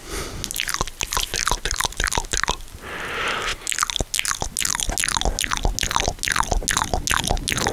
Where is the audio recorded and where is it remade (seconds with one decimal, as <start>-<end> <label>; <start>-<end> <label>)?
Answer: 0.0-7.7 recorded

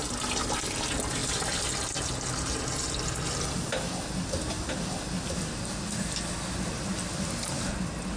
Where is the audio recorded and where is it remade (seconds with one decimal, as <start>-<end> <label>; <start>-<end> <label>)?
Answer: 0.0-8.2 recorded